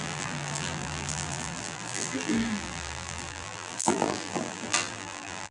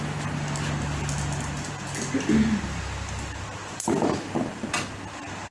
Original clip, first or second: second